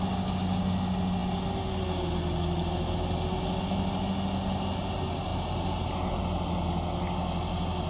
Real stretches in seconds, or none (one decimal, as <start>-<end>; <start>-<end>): 0.0-5.3; 6.2-7.9